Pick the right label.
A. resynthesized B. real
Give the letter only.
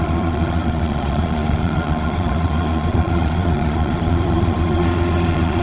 A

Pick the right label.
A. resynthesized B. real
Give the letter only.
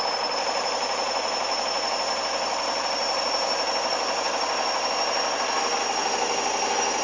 B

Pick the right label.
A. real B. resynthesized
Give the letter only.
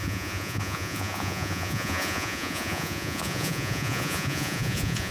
B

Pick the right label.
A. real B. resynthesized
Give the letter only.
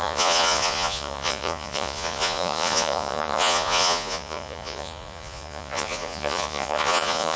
B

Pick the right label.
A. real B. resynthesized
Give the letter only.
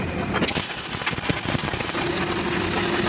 A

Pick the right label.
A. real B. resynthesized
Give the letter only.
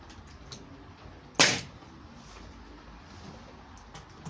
A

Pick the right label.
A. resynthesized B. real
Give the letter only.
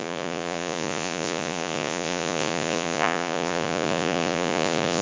A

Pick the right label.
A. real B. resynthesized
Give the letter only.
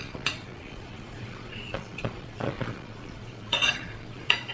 B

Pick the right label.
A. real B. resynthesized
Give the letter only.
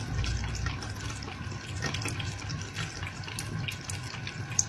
A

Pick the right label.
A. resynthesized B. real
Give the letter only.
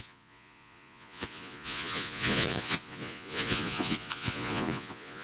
A